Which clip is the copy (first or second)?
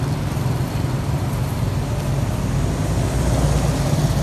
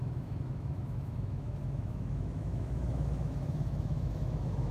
second